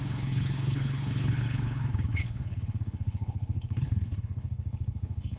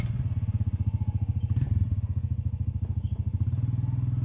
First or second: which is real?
second